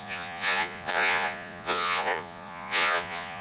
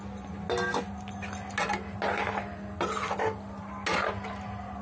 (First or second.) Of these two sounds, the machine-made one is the first